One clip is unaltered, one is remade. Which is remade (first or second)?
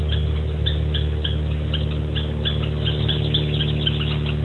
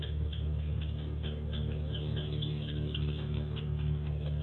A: second